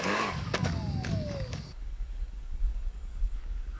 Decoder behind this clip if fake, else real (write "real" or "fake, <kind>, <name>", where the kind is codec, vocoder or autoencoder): fake, codec, DAC